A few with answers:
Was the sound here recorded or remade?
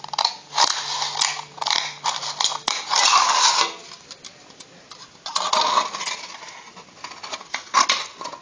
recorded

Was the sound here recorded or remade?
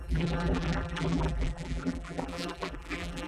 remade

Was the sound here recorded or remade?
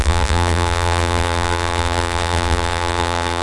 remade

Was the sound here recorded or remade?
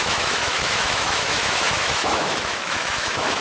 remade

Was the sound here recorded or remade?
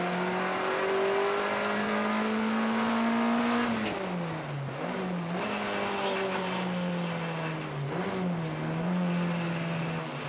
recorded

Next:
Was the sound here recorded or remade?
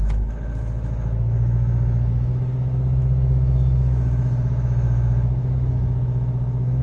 remade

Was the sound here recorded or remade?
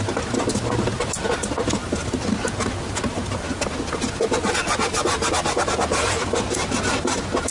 recorded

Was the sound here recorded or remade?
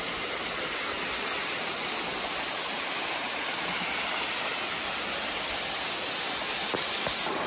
recorded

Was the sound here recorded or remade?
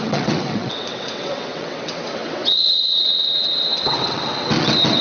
remade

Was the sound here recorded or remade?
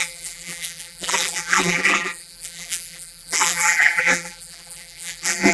remade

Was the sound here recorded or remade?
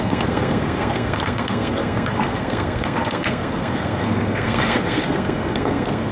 remade